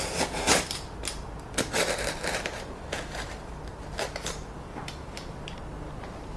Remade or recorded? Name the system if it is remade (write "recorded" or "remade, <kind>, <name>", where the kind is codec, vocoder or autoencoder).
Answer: recorded